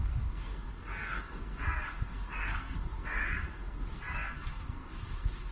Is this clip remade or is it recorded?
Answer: remade